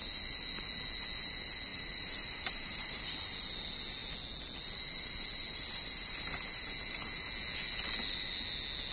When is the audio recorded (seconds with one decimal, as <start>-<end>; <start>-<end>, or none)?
0.0-1.7; 3.0-8.9